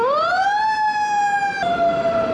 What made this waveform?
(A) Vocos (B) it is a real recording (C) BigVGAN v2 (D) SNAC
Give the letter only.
B